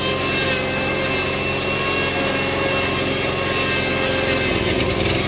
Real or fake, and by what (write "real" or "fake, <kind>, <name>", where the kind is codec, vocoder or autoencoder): real